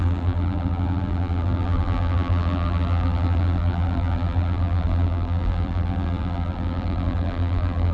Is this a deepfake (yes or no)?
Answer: yes